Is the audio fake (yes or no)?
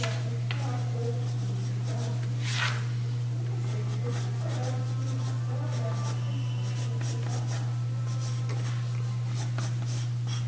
no